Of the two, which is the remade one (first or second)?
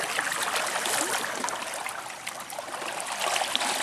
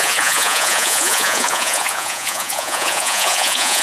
second